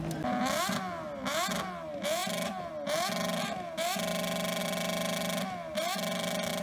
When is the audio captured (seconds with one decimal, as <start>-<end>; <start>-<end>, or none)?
0.0-6.6